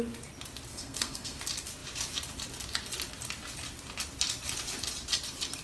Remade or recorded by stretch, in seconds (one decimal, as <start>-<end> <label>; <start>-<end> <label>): 0.0-0.7 recorded; 0.7-1.4 remade; 1.4-5.6 recorded